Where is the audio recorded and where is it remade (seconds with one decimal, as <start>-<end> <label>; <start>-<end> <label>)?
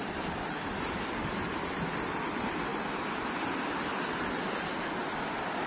0.0-5.7 recorded